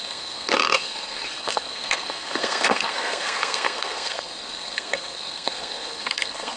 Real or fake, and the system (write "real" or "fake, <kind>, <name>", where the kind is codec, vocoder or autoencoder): fake, codec, SNAC